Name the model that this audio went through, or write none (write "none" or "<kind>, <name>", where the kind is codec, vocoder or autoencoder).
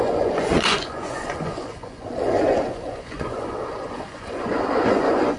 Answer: vocoder, Vocos